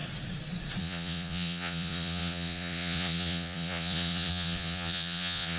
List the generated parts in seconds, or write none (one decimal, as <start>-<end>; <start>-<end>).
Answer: 0.8-5.6